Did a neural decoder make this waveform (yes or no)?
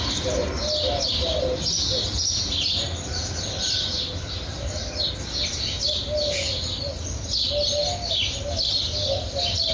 no